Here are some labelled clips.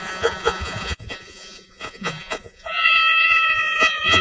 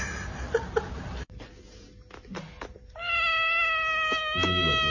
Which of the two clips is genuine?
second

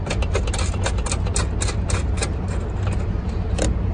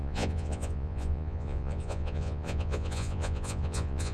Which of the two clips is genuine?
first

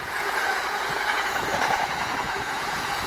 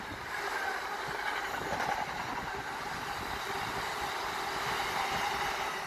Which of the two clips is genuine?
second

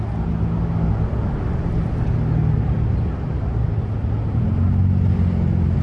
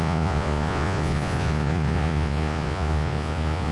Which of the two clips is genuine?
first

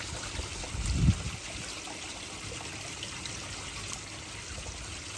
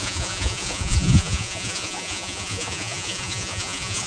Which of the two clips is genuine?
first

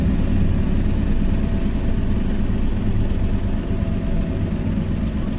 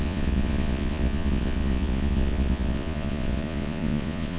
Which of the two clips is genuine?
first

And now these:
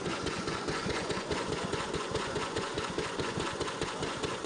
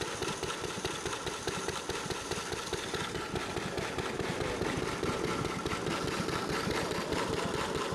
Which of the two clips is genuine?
second